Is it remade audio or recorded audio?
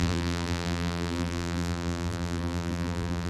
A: remade